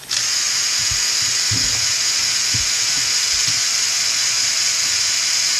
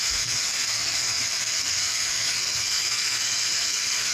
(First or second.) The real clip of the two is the first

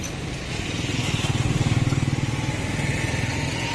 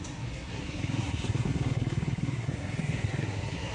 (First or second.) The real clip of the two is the first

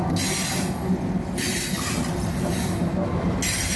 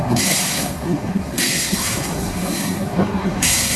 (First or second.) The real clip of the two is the first